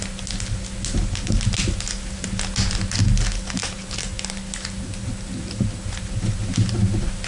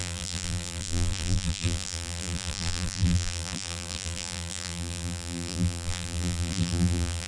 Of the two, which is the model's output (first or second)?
second